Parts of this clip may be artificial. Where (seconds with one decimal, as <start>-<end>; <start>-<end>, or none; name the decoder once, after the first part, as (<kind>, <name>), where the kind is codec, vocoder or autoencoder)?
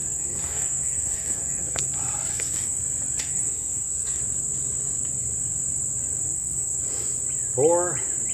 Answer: 0.0-1.9 (codec, SNAC); 2.3-2.8; 3.2-4.2; 6.2-6.8